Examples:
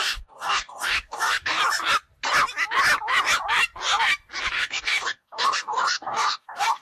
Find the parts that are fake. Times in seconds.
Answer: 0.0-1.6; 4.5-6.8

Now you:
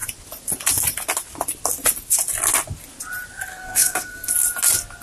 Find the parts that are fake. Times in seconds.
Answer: 3.5-4.3

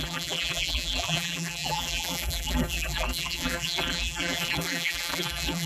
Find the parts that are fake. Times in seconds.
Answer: 0.0-5.7

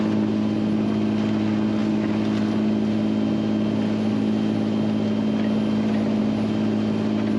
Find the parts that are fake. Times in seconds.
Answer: none

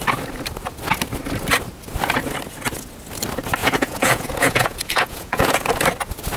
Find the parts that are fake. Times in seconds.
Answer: 3.6-5.7

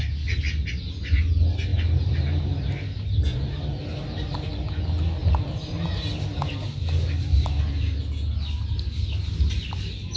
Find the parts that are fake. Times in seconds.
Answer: 1.7-2.5; 5.2-5.7

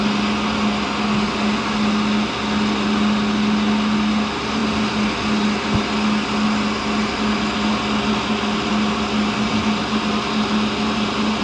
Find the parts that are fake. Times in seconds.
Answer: none